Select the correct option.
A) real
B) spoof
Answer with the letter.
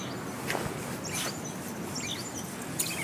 A